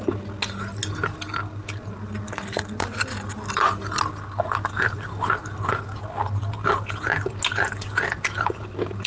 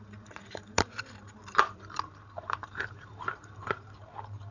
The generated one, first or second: second